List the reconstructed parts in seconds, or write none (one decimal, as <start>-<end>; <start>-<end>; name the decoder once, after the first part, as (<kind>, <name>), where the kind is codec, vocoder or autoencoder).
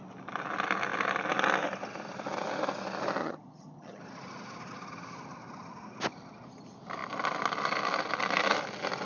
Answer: 3.2-4.0 (vocoder, HiFi-GAN)